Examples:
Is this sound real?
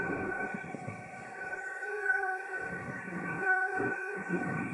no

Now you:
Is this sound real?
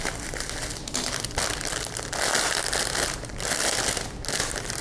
yes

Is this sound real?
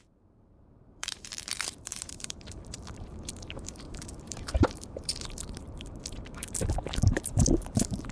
no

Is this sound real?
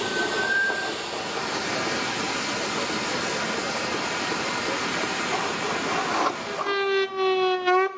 yes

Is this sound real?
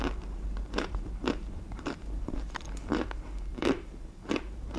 no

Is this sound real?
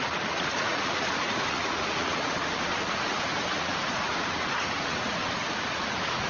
no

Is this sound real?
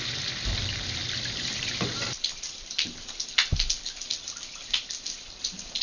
no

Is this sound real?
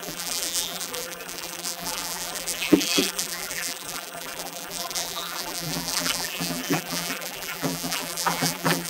no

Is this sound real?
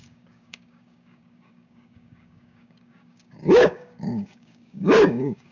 no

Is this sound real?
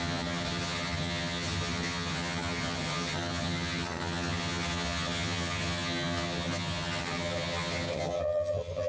no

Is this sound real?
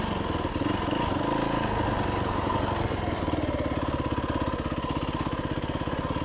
yes